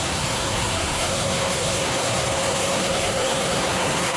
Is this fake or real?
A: fake